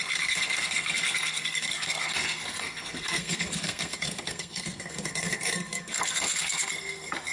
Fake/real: fake